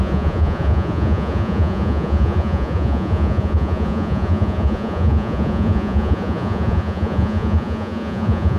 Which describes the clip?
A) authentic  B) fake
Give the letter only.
B